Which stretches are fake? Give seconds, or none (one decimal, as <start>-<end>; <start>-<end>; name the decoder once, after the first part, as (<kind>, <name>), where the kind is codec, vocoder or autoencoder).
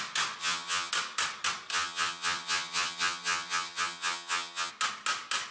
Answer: 0.4-0.9 (vocoder, HiFi-GAN); 1.7-4.7